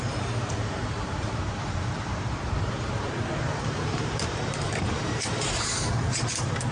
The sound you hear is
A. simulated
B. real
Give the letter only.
A